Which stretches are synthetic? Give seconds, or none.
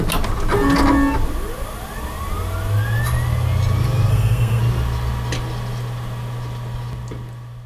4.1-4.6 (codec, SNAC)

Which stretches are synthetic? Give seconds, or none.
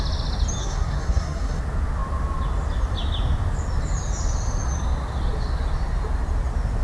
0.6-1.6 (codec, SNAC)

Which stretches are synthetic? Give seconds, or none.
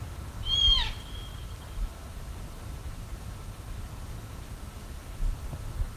1.3-4.5 (vocoder, BigVGAN v2)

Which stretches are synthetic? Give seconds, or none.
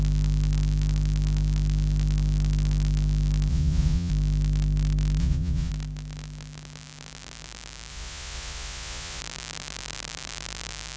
3.5-4.1 (vocoder, Vocos); 5.2-5.7; 7.9-9.2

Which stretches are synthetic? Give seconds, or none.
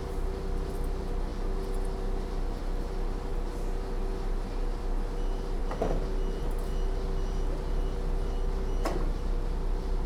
none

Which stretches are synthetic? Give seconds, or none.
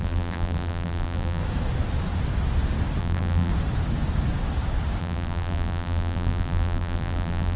0.0-1.4 (vocoder, BigVGAN v2); 3.0-3.5; 5.0-7.6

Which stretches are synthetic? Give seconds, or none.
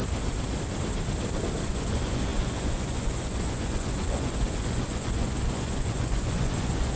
1.7-7.0 (vocoder, Vocos)